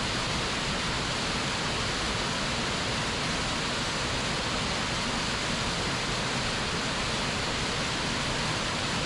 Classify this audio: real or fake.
real